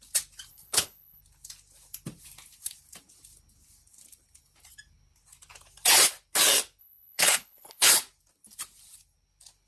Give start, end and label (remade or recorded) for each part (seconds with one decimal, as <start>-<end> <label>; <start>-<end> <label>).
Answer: 0.0-0.5 recorded; 0.5-1.2 remade; 1.2-6.8 recorded; 6.8-7.9 remade; 7.9-9.7 recorded